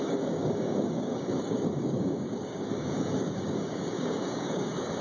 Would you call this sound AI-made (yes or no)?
yes